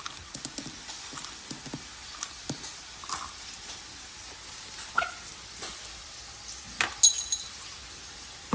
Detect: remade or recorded recorded